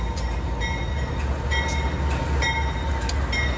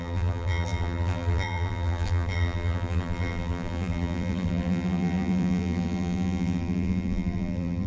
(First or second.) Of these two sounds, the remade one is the second